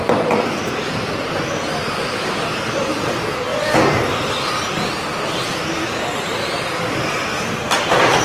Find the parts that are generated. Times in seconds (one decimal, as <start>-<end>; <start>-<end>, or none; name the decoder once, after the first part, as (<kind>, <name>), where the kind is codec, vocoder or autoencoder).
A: 0.0-3.1 (vocoder, BigVGAN v2)